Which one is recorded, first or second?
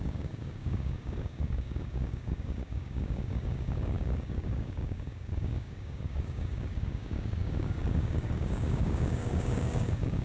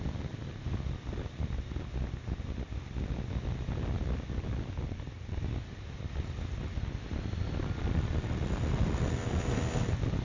second